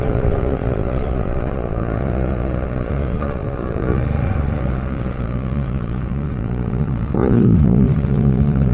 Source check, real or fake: fake